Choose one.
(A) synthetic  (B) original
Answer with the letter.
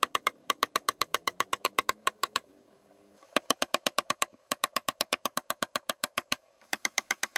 A